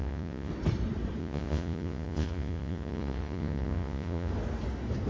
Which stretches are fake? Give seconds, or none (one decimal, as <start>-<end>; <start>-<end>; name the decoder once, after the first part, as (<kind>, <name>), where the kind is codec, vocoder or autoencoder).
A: 0.0-0.5 (vocoder, Vocos); 1.2-4.3